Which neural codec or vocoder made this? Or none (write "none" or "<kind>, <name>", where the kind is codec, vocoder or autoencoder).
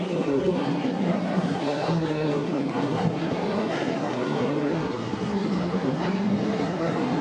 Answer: codec, SNAC